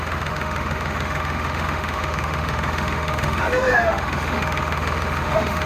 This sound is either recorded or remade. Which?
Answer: remade